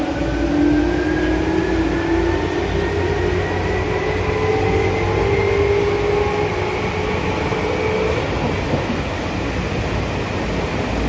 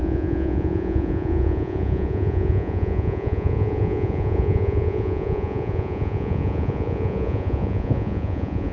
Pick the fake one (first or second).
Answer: second